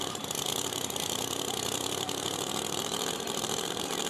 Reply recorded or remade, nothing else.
remade